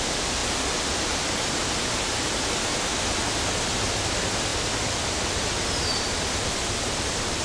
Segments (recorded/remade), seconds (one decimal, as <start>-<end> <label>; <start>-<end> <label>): 0.0-7.4 recorded